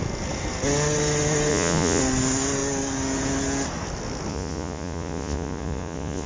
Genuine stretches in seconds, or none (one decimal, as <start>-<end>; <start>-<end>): 0.0-1.5; 2.0-4.3

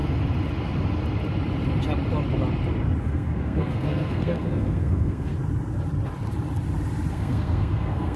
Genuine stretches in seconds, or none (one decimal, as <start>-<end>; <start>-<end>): 0.0-3.0; 5.3-7.1

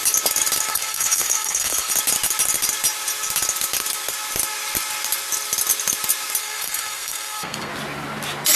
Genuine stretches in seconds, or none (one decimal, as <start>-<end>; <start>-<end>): 0.0-0.7; 1.9-6.4; 7.7-8.6

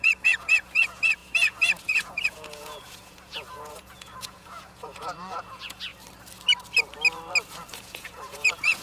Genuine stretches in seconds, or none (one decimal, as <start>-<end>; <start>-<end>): 5.9-7.8

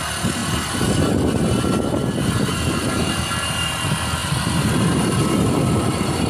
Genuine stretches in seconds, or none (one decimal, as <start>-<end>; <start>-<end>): 0.0-4.2

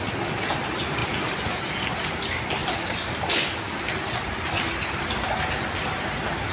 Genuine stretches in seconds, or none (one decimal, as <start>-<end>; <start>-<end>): 0.0-6.5